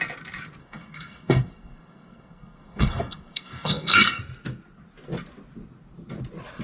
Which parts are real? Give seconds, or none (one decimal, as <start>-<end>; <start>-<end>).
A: 0.0-0.6; 4.2-6.6

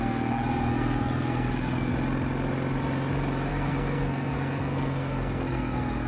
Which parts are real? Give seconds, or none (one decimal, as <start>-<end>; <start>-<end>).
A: 1.9-3.5

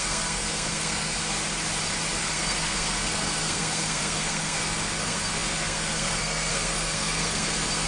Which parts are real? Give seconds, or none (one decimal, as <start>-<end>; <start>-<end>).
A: 1.2-2.2

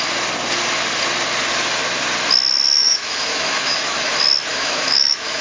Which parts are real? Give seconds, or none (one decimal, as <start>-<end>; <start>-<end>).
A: 0.0-2.8; 4.1-4.5

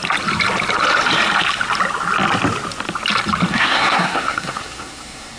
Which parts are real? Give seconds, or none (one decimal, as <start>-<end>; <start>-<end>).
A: 0.0-3.5

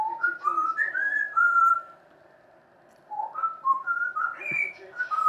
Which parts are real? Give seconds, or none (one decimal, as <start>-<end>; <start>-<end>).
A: 0.0-5.3

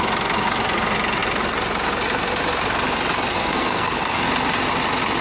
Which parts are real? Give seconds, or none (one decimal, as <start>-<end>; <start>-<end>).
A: 0.0-3.3; 4.2-5.2